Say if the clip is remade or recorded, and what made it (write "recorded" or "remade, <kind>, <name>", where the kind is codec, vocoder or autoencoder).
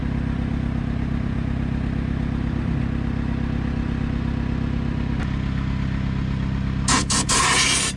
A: recorded